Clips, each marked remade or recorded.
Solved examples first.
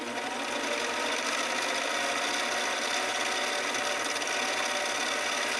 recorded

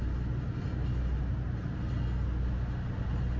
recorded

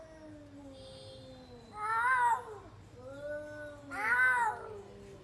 recorded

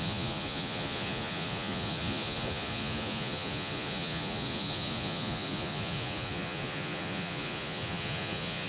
remade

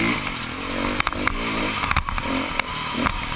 recorded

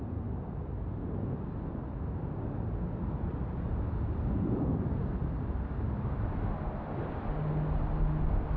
recorded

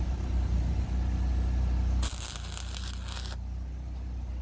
recorded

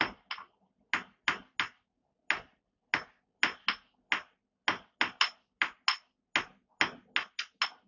recorded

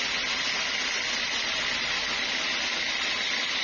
recorded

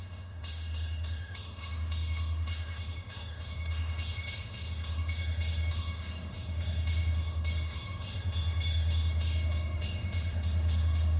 remade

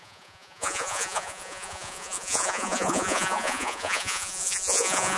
remade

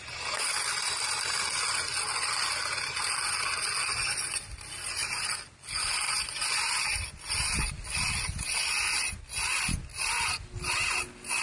recorded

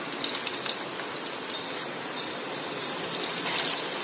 recorded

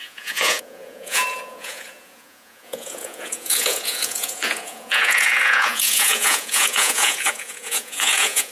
remade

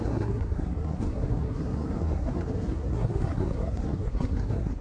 remade